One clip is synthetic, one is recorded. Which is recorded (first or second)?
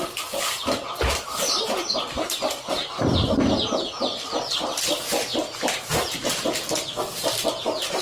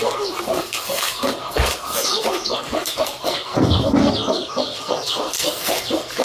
first